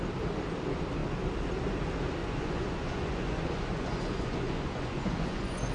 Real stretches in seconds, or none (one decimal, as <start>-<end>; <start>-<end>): 0.0-2.2

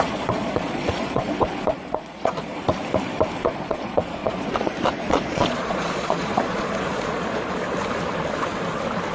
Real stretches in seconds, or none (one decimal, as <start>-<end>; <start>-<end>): 2.5-3.4; 7.6-9.1

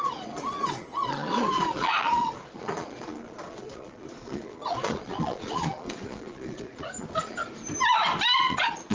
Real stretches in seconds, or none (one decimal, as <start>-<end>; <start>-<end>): 7.4-8.4